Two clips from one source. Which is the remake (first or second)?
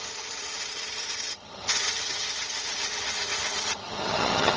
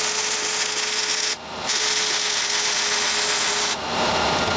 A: first